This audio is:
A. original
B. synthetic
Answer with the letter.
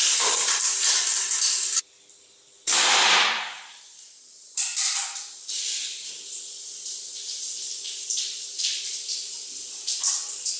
B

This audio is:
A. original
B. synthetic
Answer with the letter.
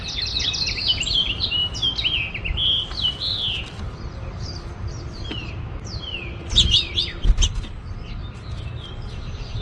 B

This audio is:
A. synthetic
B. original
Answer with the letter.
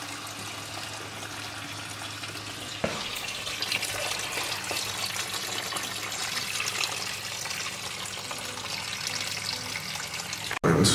B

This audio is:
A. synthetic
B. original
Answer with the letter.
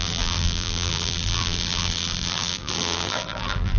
A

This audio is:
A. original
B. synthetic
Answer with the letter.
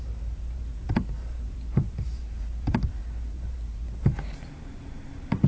B